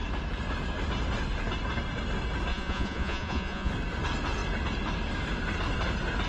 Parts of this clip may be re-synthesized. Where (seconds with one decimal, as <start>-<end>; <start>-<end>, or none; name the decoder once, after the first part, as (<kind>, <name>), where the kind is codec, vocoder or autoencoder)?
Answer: 2.5-3.7 (vocoder, Vocos)